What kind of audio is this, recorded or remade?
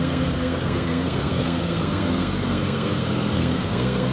remade